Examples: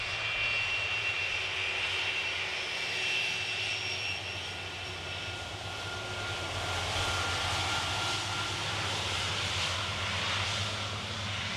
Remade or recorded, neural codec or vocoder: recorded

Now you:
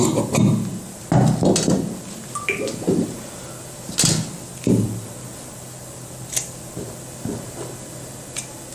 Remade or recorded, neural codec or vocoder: recorded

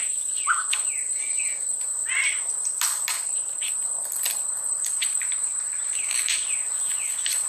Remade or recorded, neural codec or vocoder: remade, vocoder, BigVGAN v2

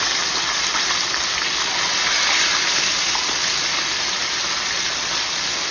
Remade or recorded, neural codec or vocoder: recorded